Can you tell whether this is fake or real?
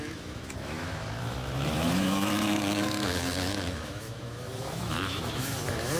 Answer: fake